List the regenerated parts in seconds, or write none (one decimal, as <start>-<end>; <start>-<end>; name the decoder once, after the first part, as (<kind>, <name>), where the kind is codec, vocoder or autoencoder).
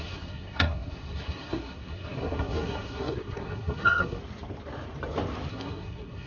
0.0-4.2 (codec, SNAC); 5.5-6.3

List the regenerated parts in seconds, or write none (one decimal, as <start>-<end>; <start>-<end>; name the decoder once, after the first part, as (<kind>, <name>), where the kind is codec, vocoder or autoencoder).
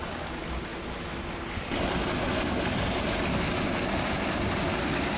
none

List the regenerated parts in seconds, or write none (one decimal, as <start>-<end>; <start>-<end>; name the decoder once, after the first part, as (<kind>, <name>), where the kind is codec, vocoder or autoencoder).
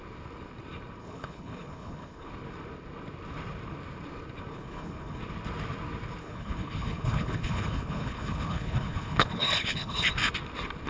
1.0-2.3 (codec, HILCodec); 4.5-5.2; 6.2-10.1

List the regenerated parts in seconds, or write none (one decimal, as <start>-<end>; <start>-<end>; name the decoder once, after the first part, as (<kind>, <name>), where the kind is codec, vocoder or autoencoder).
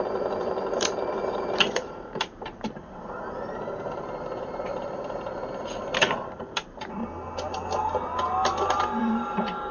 0.0-7.0 (vocoder, BigVGAN v2); 9.0-9.7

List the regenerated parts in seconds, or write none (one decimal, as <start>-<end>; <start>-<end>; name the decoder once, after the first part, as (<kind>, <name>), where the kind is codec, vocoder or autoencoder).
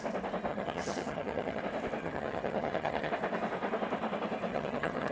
0.5-1.6 (vocoder, HiFi-GAN); 2.0-3.1; 4.5-5.1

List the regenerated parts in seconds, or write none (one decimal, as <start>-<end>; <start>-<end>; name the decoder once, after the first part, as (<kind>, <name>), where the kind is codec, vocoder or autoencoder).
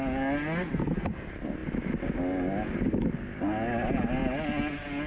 none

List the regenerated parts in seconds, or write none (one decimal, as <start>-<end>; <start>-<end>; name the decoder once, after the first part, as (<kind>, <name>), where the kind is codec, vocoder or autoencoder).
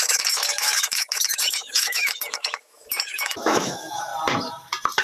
0.0-4.1 (autoencoder, DAC-VAE)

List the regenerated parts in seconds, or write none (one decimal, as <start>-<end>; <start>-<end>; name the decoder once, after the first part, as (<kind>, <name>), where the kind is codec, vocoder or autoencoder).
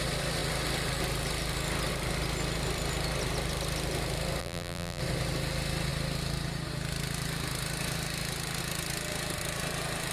4.4-5.0 (vocoder, BigVGAN v2)